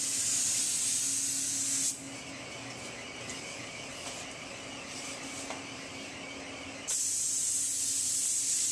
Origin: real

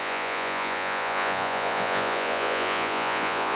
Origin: fake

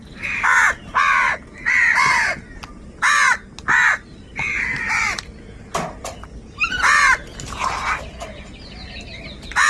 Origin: fake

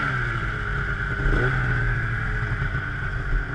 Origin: real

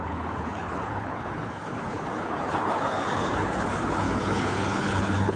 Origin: fake